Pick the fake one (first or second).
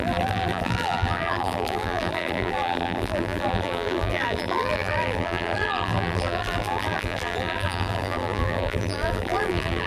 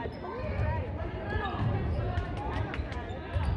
first